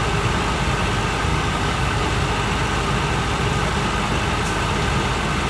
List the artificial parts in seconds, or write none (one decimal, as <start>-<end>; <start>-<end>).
1.3-2.0